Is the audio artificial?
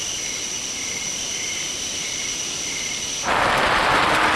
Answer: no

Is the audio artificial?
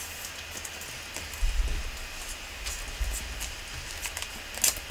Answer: no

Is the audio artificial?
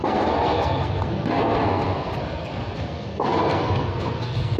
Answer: yes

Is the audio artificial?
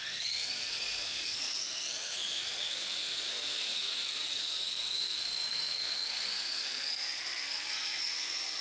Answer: yes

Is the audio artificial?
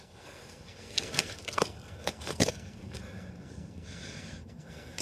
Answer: yes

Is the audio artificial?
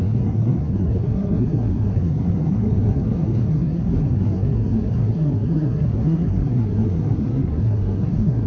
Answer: yes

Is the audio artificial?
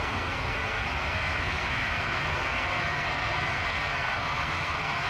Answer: yes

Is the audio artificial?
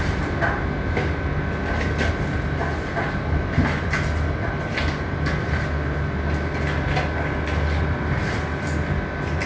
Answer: no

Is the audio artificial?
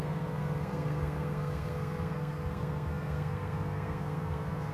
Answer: yes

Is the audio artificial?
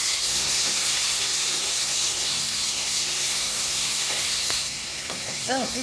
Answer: yes